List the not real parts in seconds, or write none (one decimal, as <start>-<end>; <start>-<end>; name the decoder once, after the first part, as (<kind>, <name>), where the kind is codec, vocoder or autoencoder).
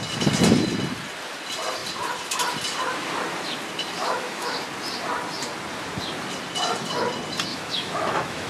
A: 4.0-4.6 (autoencoder, DAC-VAE); 7.5-8.5